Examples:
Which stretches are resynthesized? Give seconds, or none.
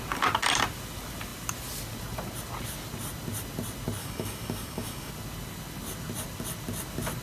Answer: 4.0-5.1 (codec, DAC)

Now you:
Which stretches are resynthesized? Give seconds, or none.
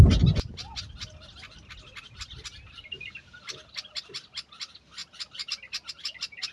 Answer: none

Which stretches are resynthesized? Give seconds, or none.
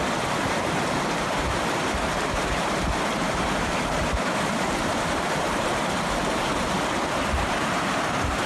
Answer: 0.0-6.5 (vocoder, BigVGAN v2); 7.4-8.5